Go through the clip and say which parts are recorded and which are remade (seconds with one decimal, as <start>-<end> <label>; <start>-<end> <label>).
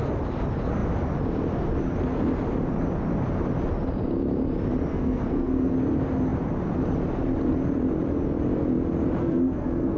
0.0-4.9 recorded; 4.9-5.7 remade; 5.7-9.2 recorded; 9.2-10.0 remade